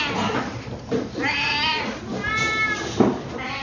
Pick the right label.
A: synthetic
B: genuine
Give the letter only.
B